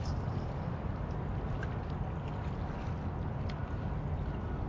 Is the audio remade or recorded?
recorded